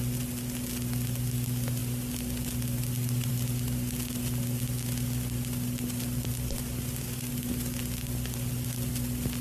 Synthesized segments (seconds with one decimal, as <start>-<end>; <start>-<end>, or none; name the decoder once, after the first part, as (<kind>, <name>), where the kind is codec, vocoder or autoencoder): none